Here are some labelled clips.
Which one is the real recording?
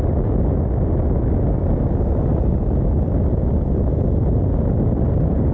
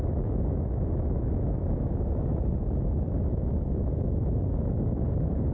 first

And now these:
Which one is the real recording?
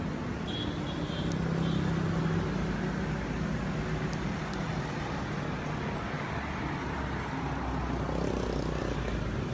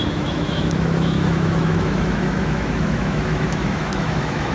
first